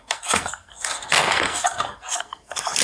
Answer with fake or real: fake